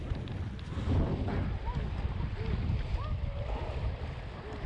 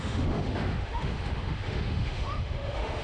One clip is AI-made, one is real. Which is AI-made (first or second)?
second